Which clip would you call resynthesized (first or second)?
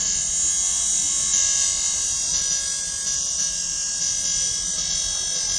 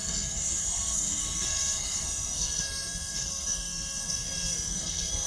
second